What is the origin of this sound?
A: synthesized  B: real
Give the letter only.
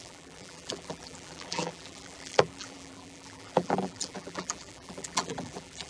A